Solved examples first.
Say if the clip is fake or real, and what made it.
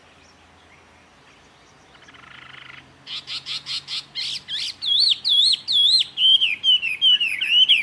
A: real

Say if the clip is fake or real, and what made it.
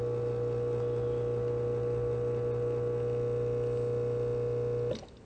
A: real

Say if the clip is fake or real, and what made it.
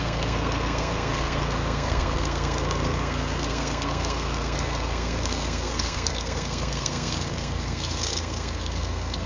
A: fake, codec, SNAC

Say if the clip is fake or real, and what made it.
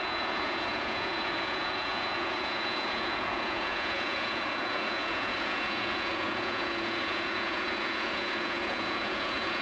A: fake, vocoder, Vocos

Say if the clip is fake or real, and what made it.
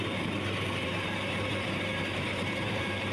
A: fake, vocoder, BigVGAN v2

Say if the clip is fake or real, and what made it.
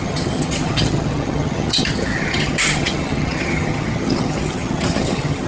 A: fake, vocoder, HiFi-GAN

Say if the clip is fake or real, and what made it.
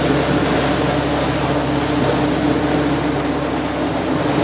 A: real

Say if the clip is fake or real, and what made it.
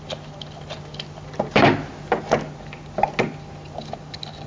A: real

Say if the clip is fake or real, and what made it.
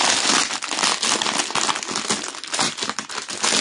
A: real